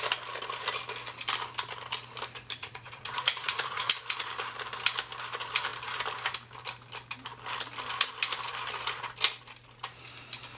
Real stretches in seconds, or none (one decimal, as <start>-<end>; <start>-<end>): 0.0-2.6; 3.9-10.6